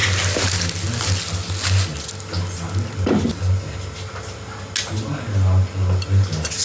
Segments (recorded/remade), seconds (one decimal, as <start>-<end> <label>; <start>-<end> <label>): 0.0-6.6 recorded